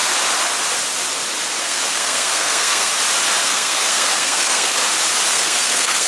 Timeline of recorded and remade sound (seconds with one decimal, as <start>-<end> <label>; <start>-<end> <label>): 0.0-1.6 recorded; 1.6-2.9 remade; 2.9-3.4 recorded; 3.4-4.8 remade; 4.8-5.3 recorded; 5.3-6.1 remade